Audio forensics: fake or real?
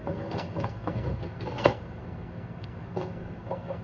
fake